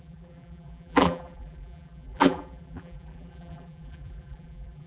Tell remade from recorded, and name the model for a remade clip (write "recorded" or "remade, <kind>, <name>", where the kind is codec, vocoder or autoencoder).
remade, vocoder, BigVGAN v2